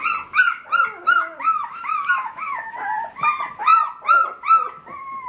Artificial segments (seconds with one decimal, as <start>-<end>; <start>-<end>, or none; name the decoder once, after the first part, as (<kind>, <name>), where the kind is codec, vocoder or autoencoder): 1.0-2.7 (autoencoder, DAC-VAE)